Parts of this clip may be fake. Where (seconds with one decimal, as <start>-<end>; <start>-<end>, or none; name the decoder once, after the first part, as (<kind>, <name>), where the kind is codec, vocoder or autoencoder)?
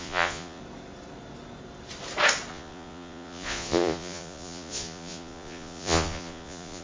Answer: 0.0-0.6 (vocoder, Vocos); 2.5-6.8